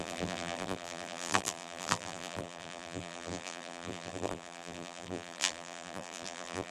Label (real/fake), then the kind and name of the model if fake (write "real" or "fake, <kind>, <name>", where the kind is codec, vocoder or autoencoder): fake, vocoder, BigVGAN v2